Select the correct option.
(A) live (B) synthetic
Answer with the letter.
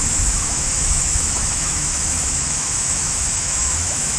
B